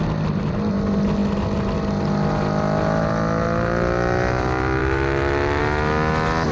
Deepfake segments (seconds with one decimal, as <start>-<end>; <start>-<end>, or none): 4.8-5.6